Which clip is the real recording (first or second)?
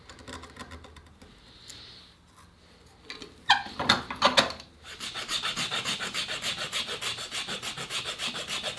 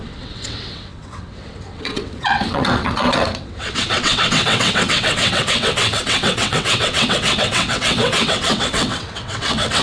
first